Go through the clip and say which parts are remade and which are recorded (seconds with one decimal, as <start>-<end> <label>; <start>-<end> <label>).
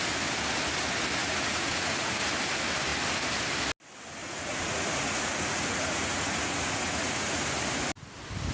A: 0.0-1.2 recorded; 1.2-2.1 remade; 2.1-4.2 recorded; 4.2-7.4 remade; 7.4-8.5 recorded